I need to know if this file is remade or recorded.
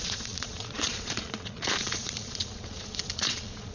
remade